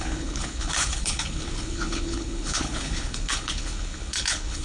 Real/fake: fake